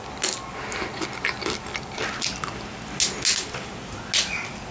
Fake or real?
real